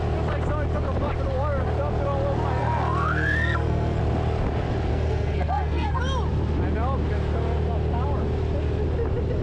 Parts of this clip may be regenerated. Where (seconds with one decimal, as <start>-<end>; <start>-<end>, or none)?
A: 2.6-4.0; 4.9-6.0